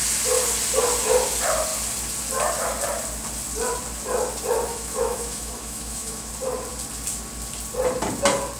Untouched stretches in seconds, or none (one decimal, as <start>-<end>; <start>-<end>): 0.0-4.7; 6.3-8.6

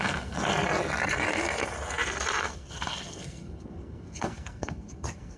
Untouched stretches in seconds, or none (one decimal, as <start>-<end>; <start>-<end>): 0.5-2.4

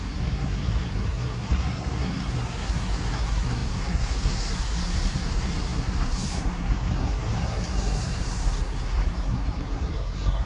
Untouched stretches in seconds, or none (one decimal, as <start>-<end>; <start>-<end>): none

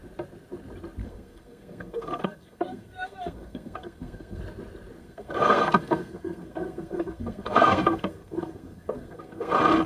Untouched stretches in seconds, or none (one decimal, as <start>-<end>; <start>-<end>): 0.0-1.0; 4.4-5.0; 9.5-9.9